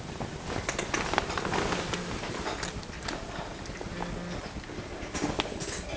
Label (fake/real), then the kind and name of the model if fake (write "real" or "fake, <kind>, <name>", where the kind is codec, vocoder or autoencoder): real